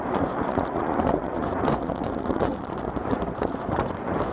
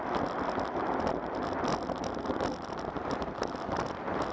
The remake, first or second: first